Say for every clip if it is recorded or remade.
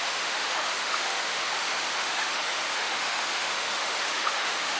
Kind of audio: remade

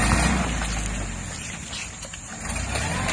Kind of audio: recorded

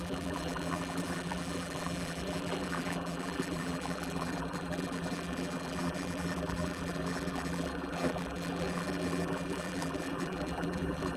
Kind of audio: remade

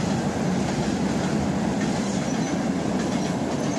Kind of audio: recorded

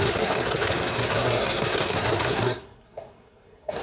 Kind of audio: remade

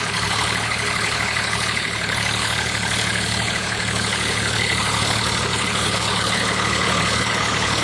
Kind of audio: remade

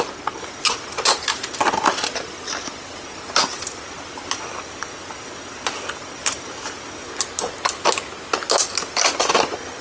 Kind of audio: recorded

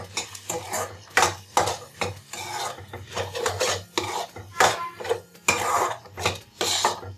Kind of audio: recorded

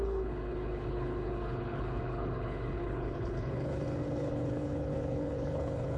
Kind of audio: remade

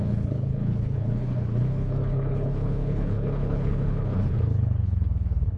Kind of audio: remade